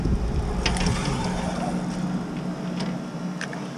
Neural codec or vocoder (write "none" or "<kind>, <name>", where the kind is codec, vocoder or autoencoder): none